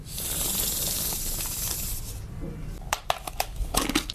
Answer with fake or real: real